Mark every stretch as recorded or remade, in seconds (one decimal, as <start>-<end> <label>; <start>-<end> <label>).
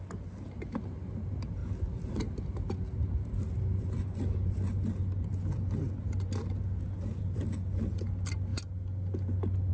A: 0.0-9.7 recorded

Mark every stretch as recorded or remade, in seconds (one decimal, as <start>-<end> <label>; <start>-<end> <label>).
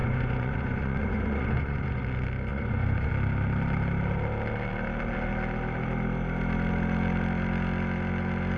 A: 0.0-2.0 remade; 2.0-2.5 recorded; 2.5-3.1 remade; 3.1-8.6 recorded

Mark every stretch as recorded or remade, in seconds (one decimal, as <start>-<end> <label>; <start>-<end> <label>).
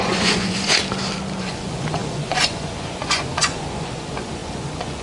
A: 0.0-0.8 remade; 0.8-1.4 recorded; 1.4-5.0 remade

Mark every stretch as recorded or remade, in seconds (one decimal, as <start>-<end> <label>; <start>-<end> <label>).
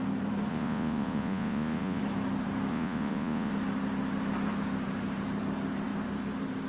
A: 0.0-0.5 recorded; 0.5-2.0 remade; 2.0-2.7 recorded; 2.7-3.5 remade; 3.5-6.7 recorded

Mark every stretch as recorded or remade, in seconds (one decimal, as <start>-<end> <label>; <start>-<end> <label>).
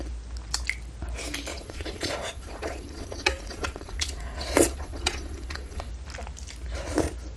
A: 0.0-1.5 recorded; 1.5-5.9 remade; 5.9-7.4 recorded